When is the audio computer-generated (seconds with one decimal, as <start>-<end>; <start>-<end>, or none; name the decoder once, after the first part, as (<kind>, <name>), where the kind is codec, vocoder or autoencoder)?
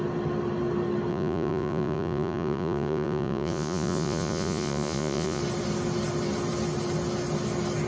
1.1-5.4 (vocoder, Vocos)